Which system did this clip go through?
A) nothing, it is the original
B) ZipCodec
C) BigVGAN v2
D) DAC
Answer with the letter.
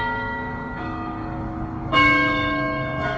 D